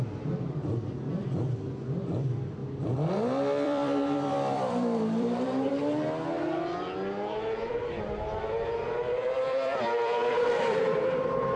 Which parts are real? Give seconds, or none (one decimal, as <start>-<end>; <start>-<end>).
0.0-2.6; 5.7-7.6